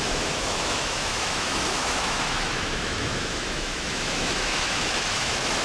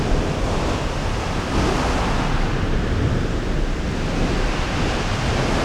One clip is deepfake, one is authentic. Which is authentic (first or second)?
second